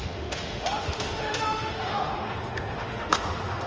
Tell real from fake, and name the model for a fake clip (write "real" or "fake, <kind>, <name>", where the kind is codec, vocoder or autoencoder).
fake, autoencoder, DAC-VAE